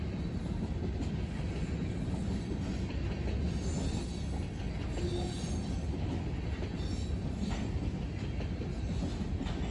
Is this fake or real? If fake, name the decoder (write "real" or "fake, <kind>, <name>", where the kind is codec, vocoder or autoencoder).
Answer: real